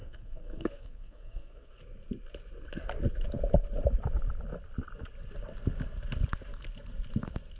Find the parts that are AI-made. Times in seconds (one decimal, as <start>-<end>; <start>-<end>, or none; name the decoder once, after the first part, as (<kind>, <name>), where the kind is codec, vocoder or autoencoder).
0.0-1.8 (codec, SNAC)

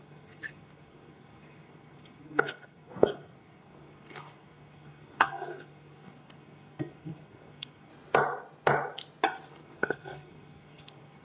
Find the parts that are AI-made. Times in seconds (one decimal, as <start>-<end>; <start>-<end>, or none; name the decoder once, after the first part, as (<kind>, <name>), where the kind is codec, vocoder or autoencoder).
0.0-7.9 (codec, SNAC); 9.5-11.2